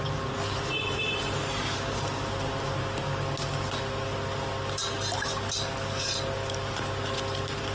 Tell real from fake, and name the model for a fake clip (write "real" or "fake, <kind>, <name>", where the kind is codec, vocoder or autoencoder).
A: real